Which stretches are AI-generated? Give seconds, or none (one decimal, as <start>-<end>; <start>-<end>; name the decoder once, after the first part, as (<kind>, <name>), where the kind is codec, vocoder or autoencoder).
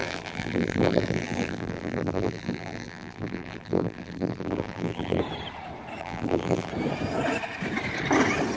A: 0.0-5.2 (vocoder, BigVGAN v2); 6.0-6.7